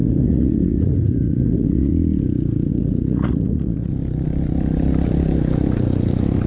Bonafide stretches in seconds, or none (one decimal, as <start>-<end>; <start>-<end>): 1.9-2.7; 3.9-6.5